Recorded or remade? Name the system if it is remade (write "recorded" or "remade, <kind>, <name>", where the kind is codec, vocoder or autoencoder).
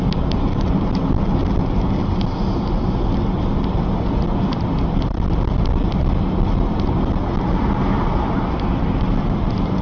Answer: recorded